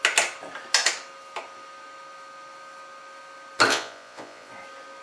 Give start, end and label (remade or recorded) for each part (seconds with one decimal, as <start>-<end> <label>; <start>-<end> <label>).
0.0-3.7 recorded; 3.7-4.5 remade; 4.5-5.0 recorded